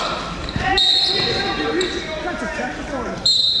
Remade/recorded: remade